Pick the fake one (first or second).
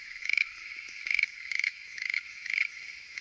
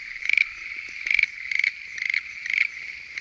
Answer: first